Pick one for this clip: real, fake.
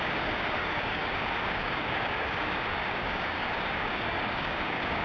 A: fake